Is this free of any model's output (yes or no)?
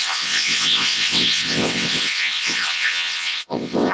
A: no